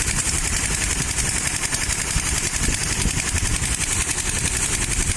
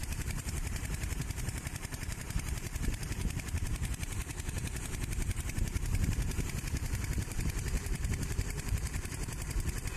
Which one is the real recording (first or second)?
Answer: first